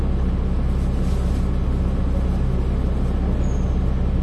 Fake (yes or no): no